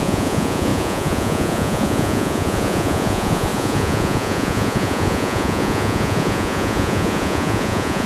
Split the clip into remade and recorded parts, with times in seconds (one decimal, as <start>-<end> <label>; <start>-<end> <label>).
0.0-8.1 remade